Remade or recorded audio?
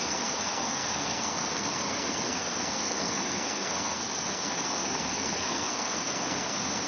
remade